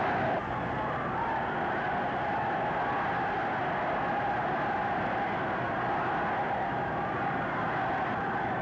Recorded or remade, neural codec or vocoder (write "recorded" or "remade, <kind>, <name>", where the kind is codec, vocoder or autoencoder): recorded